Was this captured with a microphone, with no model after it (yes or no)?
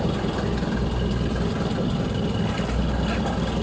yes